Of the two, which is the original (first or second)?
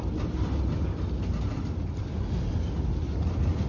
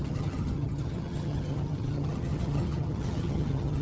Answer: first